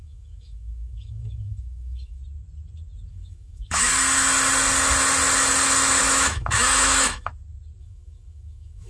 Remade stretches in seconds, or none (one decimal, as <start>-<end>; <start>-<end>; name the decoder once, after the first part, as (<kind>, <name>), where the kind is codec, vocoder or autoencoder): 0.0-2.2 (autoencoder, DAC-VAE); 3.1-3.9; 6.0-7.3; 7.8-8.9